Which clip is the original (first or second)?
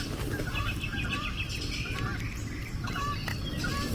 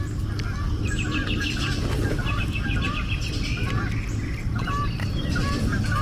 second